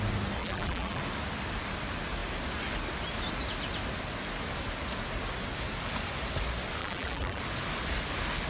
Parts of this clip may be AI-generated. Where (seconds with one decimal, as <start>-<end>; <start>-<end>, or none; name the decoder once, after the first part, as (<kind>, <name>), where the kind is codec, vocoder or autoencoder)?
0.4-1.0 (vocoder, BigVGAN v2); 6.8-7.4